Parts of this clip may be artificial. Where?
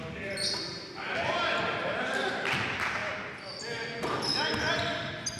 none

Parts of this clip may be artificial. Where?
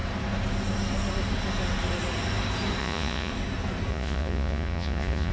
2.8-3.3 (vocoder, Vocos); 3.9-5.3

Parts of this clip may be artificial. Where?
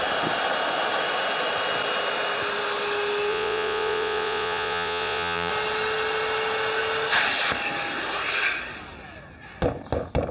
3.3-5.5 (vocoder, Vocos)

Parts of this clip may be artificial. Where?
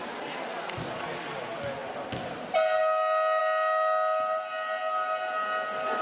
none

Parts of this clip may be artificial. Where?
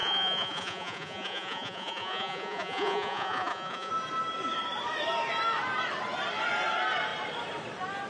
0.0-3.9 (vocoder, Vocos)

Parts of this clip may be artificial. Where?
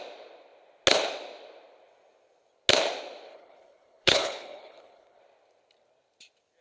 3.3-5.2 (codec, HILCodec)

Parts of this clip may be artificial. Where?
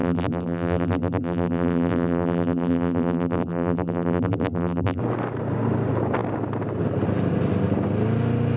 0.0-5.0 (vocoder, BigVGAN v2)